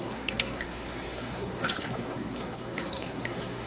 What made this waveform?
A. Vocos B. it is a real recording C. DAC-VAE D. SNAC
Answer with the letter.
D